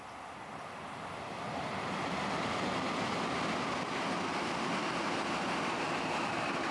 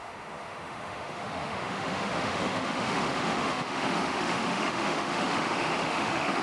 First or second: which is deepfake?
second